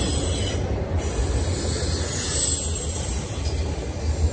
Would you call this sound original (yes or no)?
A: yes